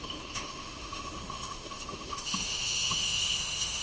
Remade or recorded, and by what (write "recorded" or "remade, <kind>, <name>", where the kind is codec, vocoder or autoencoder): remade, autoencoder, DAC-VAE